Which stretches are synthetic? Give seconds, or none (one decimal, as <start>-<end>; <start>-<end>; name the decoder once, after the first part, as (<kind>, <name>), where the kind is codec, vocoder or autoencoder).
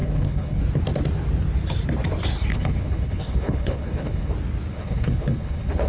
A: 0.0-0.6 (codec, HILCodec); 2.5-4.3; 4.7-5.9